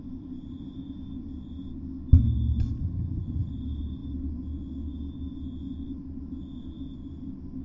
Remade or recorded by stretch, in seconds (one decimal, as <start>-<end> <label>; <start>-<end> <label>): 0.0-2.8 recorded; 2.8-3.5 remade; 3.5-7.6 recorded